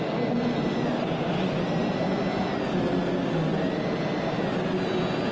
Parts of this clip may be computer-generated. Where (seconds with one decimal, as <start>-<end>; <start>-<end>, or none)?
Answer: none